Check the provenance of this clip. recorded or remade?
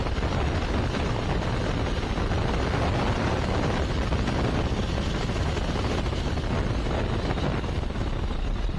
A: recorded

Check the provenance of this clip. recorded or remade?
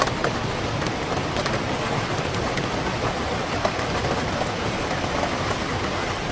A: recorded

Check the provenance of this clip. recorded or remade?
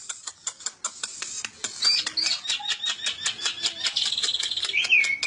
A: recorded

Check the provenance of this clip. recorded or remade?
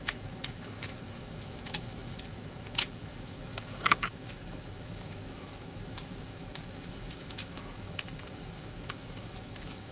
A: remade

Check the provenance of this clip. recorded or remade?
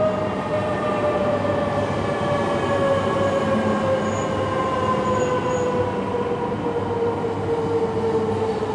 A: recorded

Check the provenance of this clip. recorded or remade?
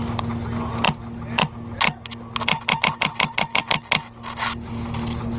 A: recorded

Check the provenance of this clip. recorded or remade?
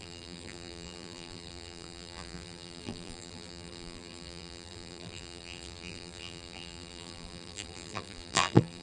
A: remade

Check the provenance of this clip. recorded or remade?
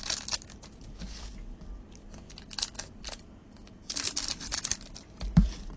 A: recorded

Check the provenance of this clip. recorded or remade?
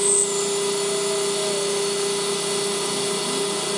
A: recorded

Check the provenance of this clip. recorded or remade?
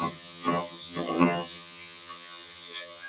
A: remade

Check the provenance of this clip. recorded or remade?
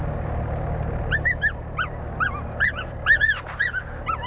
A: recorded